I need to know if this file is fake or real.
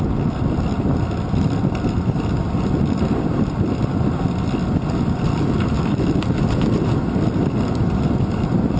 real